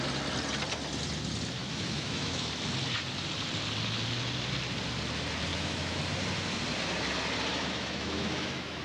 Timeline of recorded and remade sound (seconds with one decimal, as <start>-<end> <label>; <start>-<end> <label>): 0.0-1.6 recorded; 1.6-2.5 remade; 2.5-5.5 recorded; 5.5-6.0 remade; 6.0-7.5 recorded; 7.5-8.8 remade